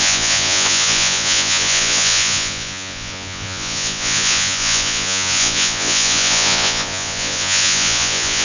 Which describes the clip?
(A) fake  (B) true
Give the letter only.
A